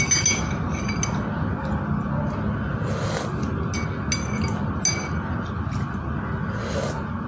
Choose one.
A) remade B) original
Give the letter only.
B